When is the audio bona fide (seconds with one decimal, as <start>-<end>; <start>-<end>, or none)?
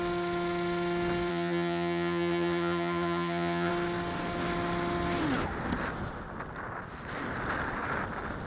0.0-1.3; 3.7-8.5